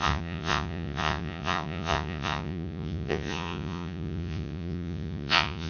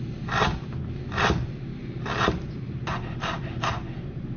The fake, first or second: first